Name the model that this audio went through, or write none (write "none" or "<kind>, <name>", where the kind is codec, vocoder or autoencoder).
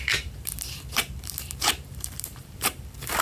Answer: vocoder, BigVGAN v2